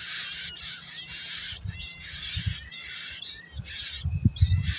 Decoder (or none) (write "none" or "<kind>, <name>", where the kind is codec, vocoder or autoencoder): none